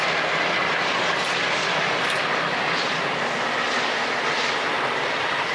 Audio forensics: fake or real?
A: real